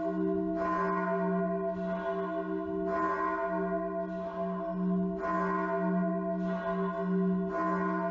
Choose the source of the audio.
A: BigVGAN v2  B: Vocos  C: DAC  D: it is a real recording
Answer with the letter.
D